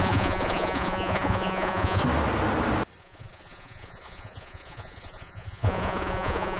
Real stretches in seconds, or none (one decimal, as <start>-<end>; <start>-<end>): 2.0-3.0

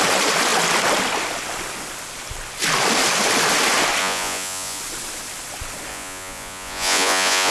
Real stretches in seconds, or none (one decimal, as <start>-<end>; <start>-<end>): 0.0-4.0; 4.8-5.9

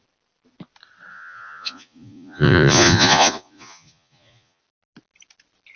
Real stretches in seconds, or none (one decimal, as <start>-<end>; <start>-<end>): 0.0-1.1; 4.6-5.8

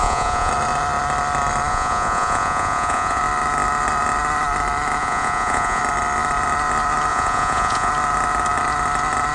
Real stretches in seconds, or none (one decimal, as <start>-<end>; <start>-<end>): 0.5-1.7; 3.2-5.0; 5.8-7.1; 7.9-9.3

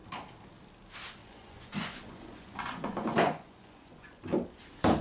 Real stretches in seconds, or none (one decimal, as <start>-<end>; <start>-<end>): 0.0-1.2; 4.2-5.0

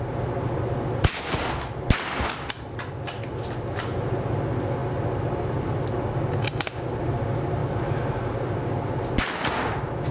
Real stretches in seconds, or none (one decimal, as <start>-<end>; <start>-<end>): 0.0-10.1

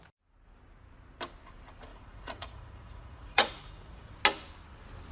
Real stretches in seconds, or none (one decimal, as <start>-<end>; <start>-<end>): 0.0-1.9; 4.2-5.1